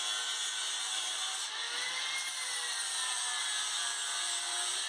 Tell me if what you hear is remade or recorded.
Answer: recorded